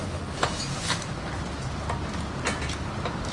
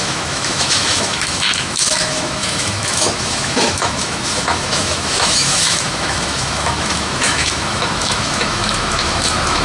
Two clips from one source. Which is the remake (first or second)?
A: second